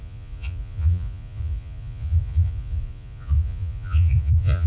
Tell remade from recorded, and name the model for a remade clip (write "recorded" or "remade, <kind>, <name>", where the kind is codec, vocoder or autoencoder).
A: remade, vocoder, Vocos